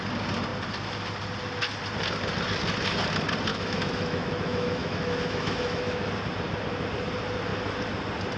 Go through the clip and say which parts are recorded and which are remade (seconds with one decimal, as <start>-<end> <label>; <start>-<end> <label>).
0.0-3.5 recorded; 3.5-6.1 remade; 6.1-8.4 recorded